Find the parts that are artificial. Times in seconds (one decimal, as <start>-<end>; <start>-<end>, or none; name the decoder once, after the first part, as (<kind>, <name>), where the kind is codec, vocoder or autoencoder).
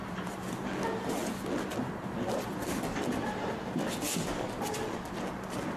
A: 0.0-0.7 (vocoder, BigVGAN v2)